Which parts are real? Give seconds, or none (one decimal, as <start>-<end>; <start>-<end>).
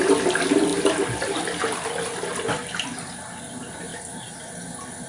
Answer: 0.0-3.9; 4.5-5.1